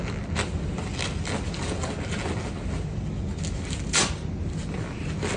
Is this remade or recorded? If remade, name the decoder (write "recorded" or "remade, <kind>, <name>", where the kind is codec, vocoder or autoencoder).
recorded